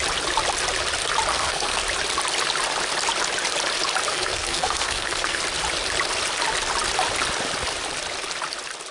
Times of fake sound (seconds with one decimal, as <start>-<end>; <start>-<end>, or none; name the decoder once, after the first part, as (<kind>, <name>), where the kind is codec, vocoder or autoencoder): 1.3-1.8 (codec, SNAC); 4.1-5.4